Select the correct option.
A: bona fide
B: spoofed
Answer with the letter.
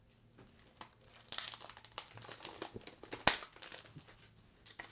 A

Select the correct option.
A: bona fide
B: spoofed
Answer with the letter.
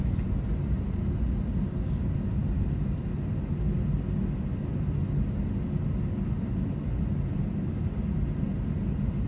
A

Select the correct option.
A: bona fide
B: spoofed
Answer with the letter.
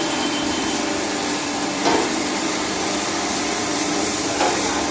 B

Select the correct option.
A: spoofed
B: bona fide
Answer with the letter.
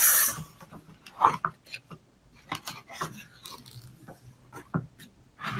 B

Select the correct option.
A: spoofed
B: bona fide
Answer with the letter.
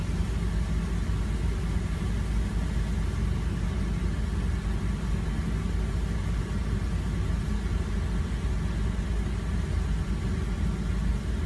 B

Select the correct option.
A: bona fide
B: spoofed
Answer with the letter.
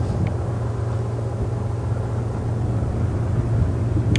A